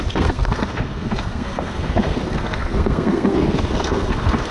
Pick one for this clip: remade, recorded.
remade